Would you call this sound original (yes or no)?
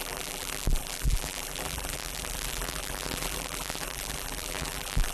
no